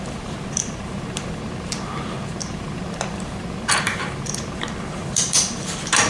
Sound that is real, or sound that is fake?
fake